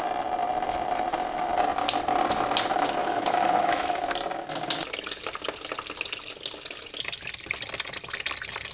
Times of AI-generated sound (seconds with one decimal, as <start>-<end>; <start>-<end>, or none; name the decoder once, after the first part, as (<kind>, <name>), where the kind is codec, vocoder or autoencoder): 3.0-4.0 (autoencoder, DAC-VAE)